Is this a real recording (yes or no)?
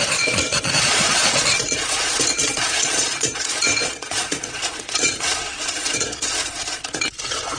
no